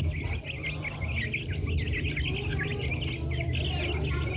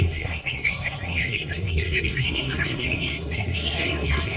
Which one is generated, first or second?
second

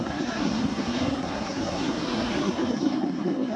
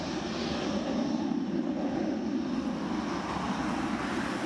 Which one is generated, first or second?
first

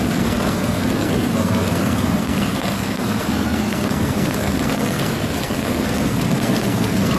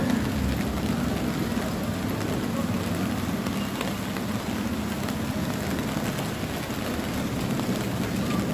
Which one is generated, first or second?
first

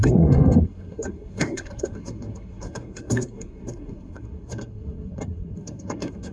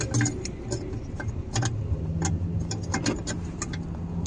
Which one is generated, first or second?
first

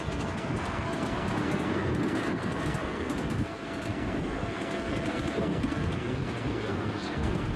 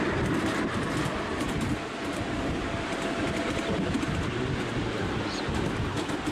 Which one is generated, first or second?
first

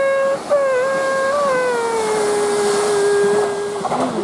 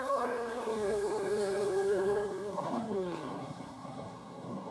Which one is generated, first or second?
second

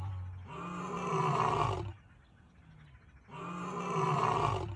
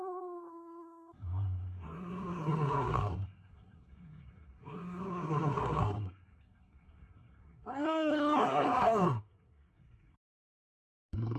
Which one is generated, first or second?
second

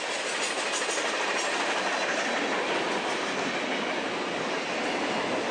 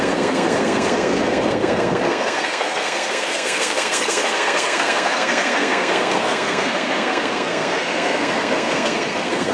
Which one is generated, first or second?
second